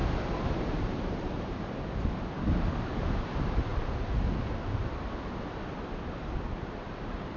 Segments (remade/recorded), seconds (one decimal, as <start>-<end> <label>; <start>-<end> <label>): 0.0-1.7 remade; 1.7-7.4 recorded